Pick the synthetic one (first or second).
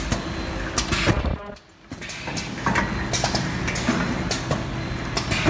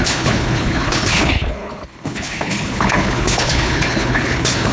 second